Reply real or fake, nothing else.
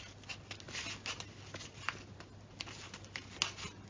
real